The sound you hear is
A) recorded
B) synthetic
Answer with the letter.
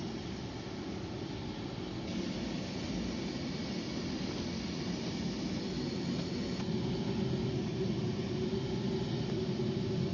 A